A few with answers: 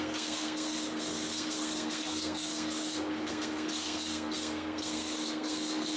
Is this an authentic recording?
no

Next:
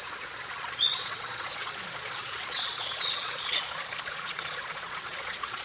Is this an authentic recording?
no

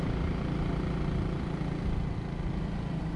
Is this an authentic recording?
yes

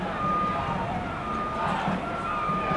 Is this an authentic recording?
yes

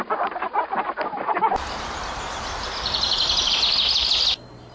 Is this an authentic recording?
yes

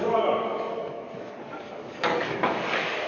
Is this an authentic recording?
no